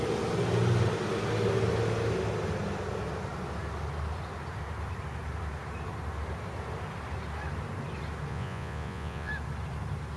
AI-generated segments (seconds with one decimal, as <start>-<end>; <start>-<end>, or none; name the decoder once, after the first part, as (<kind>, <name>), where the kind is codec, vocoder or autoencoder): 8.3-9.3 (vocoder, Vocos)